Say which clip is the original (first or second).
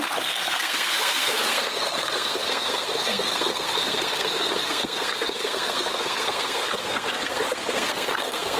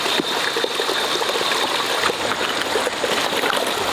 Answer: second